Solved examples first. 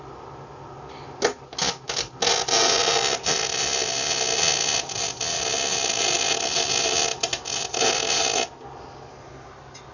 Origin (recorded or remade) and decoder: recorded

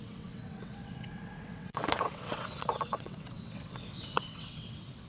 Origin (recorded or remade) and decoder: remade, vocoder, WaveNeXt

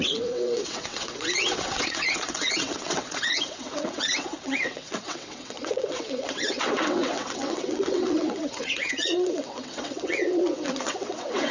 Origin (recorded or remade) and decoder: remade, vocoder, WaveNeXt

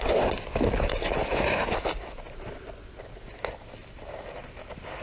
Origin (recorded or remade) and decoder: recorded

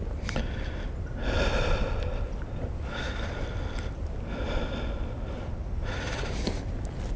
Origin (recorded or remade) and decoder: recorded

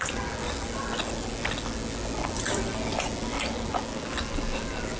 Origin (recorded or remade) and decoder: recorded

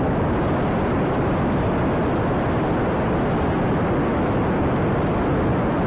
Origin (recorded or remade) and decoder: recorded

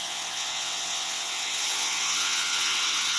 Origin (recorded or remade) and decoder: remade, vocoder, WaveNeXt